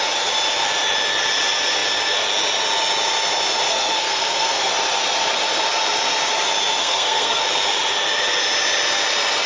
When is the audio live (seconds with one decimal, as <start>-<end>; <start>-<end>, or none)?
0.0-3.7; 4.7-6.8; 7.5-9.5